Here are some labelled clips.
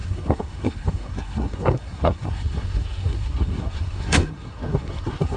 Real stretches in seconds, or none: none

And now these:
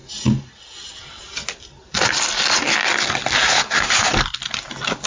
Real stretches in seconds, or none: 0.0-5.1

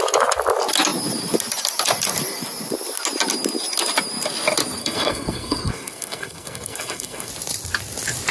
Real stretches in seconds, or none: 0.0-4.8; 7.3-8.3

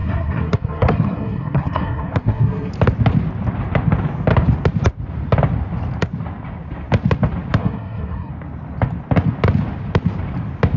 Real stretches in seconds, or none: 2.7-7.6; 8.3-10.8

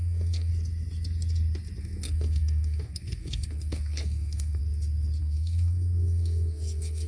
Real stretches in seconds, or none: 0.5-1.8; 4.6-5.2

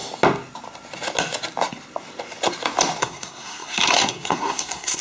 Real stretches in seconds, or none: 0.0-3.0

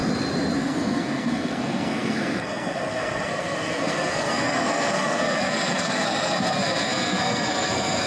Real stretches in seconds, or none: 0.0-0.6

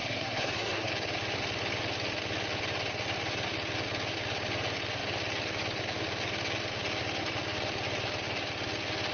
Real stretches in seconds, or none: 0.9-9.1